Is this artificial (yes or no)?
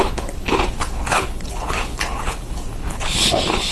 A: yes